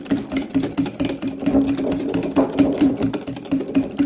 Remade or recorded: remade